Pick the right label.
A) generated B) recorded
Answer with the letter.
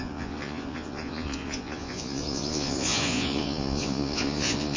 A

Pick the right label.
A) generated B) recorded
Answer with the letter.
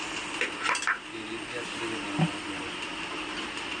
B